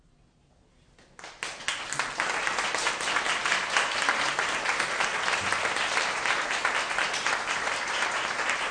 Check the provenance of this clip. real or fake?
real